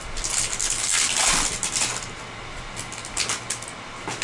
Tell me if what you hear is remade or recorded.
recorded